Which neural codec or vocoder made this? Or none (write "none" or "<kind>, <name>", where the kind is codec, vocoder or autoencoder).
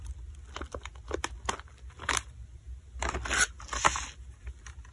none